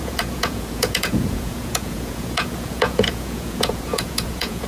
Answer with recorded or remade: remade